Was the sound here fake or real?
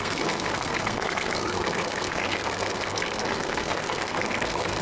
fake